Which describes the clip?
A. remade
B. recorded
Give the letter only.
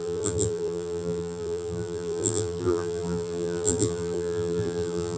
A